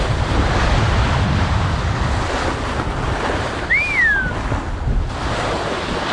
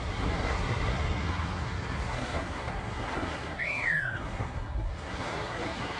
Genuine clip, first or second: first